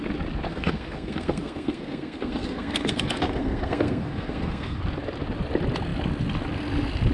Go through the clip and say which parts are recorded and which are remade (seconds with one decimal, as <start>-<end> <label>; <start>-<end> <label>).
0.0-0.5 recorded; 0.5-4.8 remade; 4.8-7.1 recorded